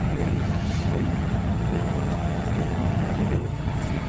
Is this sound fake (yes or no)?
yes